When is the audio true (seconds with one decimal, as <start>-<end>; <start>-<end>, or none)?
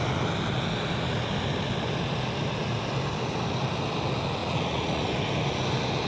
0.0-4.4; 5.1-6.1